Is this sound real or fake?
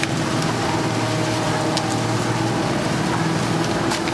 real